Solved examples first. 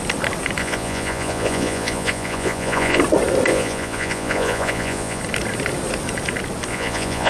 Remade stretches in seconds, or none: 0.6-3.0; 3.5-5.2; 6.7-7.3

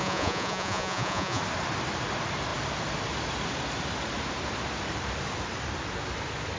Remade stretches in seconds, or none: 0.0-1.4

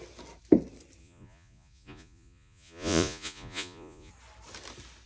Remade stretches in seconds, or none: 1.0-4.1

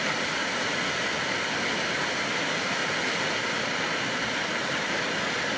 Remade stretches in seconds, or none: 0.4-0.9

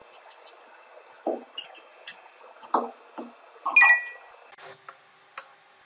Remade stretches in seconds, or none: none

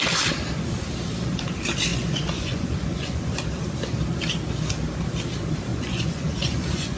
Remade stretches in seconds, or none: 1.9-3.4; 5.7-7.0